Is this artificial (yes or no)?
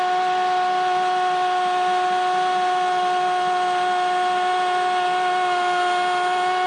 no